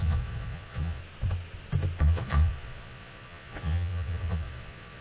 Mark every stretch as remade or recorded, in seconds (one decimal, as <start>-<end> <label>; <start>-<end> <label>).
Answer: 0.0-1.0 remade; 1.0-2.0 recorded; 2.0-5.0 remade

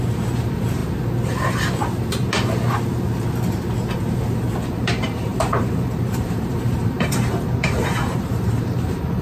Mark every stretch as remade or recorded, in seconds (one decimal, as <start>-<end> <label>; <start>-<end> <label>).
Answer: 0.0-0.8 remade; 0.8-4.7 recorded; 4.7-9.2 remade

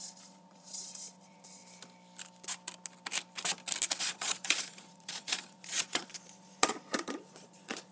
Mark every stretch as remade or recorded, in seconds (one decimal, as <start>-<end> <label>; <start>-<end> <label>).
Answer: 0.0-1.6 remade; 1.6-4.0 recorded; 4.0-7.9 remade

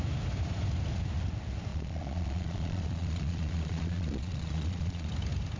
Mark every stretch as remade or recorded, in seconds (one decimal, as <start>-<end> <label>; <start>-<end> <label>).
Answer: 0.0-1.7 recorded; 1.7-5.1 remade; 5.1-5.6 recorded

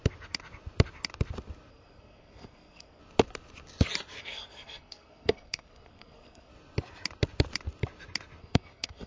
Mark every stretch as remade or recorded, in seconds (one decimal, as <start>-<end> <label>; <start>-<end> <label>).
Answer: 0.0-1.7 recorded; 1.7-3.0 remade; 3.0-4.2 recorded; 4.2-6.5 remade; 6.5-8.4 recorded; 8.4-9.1 remade

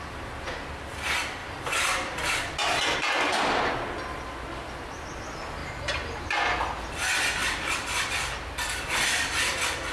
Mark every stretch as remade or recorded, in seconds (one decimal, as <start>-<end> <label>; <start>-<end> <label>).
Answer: 0.0-1.4 recorded; 1.4-2.9 remade; 2.9-5.6 recorded; 5.6-6.2 remade; 6.2-7.4 recorded; 7.4-8.0 remade; 8.0-9.9 recorded

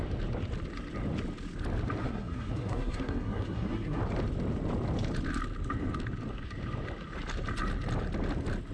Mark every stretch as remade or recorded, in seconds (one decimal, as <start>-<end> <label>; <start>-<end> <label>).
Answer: 0.0-2.0 recorded; 2.0-4.0 remade; 4.0-8.7 recorded

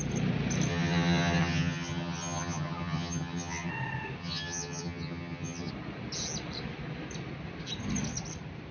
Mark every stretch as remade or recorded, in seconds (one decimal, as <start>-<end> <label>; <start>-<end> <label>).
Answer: 0.0-0.7 recorded; 0.7-3.7 remade; 3.7-4.2 recorded; 4.2-5.7 remade; 5.7-8.7 recorded